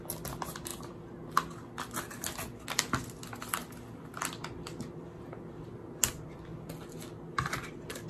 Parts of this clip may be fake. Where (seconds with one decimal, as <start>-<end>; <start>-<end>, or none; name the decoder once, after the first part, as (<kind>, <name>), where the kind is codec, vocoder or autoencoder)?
none